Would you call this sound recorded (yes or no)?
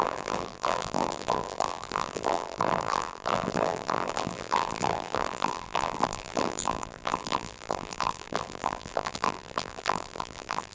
no